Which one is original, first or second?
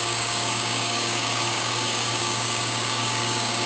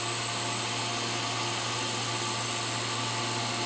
second